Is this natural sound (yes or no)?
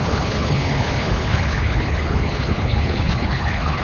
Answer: no